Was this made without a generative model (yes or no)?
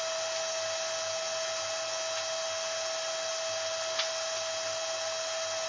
yes